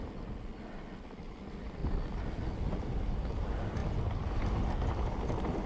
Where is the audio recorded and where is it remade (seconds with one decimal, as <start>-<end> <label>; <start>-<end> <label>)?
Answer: 0.0-5.7 recorded